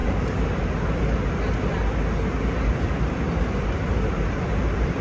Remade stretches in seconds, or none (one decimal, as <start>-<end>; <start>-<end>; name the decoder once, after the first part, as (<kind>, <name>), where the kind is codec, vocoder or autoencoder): 3.0-5.0 (vocoder, BigVGAN v2)